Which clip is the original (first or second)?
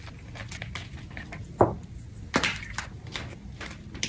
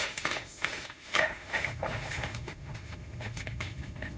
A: first